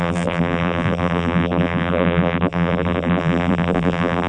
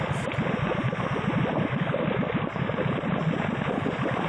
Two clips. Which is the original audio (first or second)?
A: second